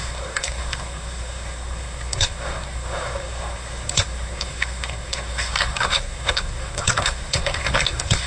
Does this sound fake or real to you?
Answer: fake